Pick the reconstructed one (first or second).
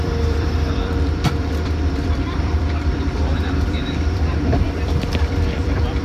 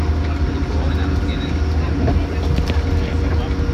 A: first